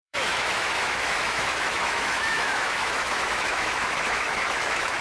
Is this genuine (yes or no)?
no